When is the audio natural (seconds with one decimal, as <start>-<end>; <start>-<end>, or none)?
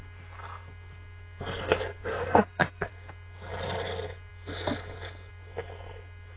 0.0-2.1; 2.9-6.4